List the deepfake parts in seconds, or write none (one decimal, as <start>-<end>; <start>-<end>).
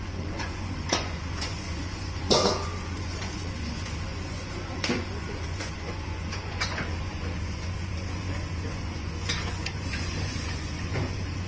0.0-11.5